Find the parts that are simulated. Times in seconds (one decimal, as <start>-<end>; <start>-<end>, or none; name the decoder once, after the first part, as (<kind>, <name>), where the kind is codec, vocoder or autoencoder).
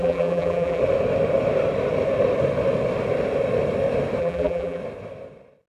0.0-0.8 (vocoder, BigVGAN v2); 4.2-4.8